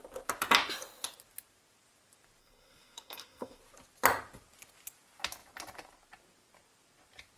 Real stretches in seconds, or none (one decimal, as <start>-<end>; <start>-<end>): 0.0-2.4; 3.6-7.4